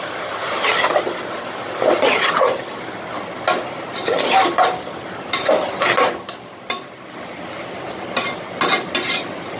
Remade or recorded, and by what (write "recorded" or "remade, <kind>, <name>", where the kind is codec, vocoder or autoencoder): recorded